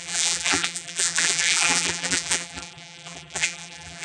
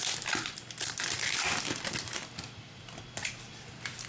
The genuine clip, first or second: second